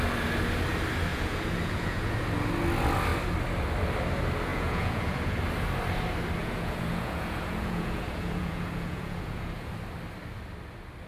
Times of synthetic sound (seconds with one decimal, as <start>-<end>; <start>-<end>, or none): 1.1-2.2; 4.5-5.4; 6.4-9.7